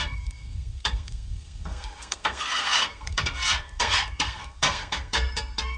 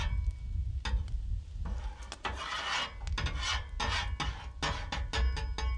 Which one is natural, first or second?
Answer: second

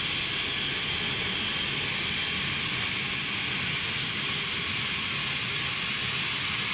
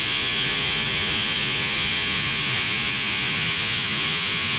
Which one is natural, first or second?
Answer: first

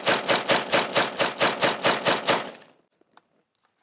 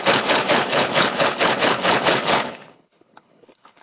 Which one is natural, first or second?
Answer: first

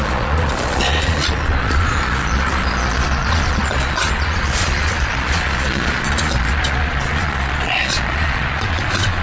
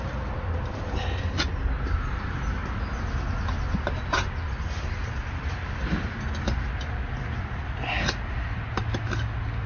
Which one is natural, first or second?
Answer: second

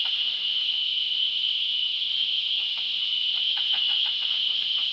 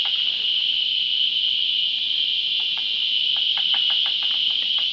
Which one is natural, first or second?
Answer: second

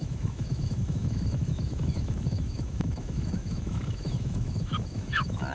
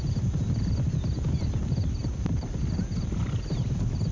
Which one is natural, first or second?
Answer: second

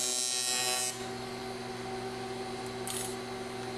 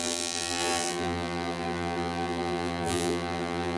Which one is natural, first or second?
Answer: first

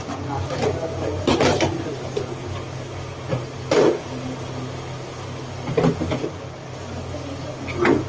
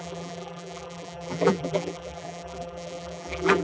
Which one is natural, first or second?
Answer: first